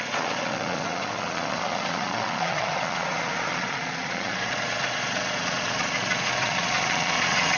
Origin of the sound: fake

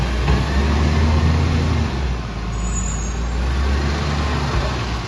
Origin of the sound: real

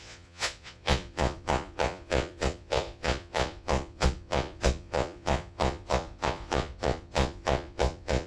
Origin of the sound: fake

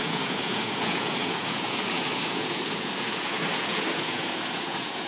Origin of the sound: fake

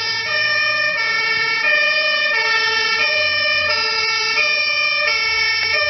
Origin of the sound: fake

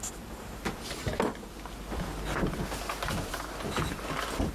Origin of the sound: real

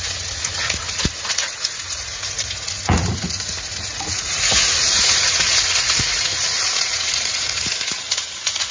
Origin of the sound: fake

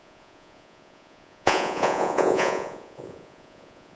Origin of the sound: fake